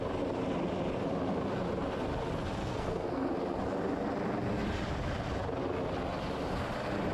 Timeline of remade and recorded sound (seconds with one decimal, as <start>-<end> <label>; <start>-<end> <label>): 0.0-2.6 recorded; 2.6-3.3 remade; 3.3-7.1 recorded